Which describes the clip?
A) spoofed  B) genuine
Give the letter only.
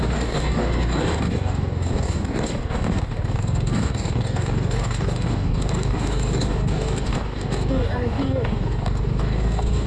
A